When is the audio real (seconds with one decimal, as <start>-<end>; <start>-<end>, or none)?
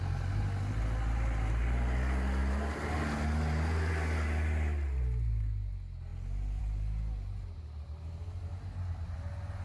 0.0-9.6